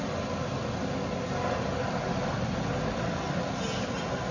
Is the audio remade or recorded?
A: recorded